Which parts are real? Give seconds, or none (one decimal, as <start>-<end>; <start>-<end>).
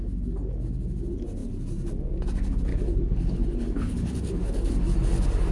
0.0-2.7; 4.7-5.5